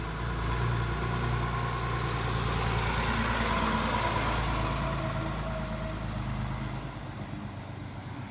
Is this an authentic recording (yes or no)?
yes